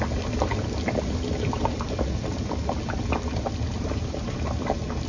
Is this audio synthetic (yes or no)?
no